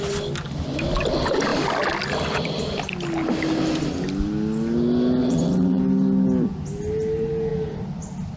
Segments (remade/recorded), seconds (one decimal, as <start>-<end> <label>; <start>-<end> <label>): 0.0-5.2 recorded; 5.2-5.8 remade; 5.8-8.4 recorded